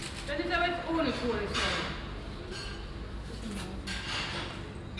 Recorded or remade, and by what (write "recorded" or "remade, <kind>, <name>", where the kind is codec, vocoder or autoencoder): recorded